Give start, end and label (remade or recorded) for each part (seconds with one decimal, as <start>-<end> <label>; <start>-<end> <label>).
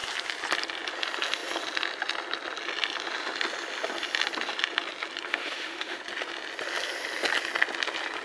0.0-5.3 recorded; 5.3-6.0 remade; 6.0-8.2 recorded